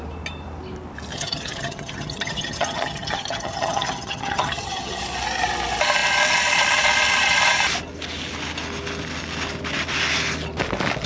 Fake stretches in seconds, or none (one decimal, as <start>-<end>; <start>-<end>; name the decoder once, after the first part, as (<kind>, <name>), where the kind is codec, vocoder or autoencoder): 1.1-5.0 (vocoder, HiFi-GAN)